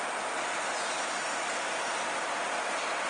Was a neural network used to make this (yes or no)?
no